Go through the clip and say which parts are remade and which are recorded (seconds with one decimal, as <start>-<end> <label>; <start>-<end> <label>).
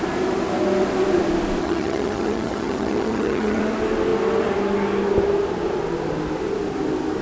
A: 0.0-1.6 recorded; 1.6-3.6 remade; 3.6-7.2 recorded